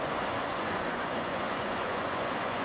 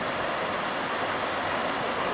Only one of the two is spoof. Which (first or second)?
first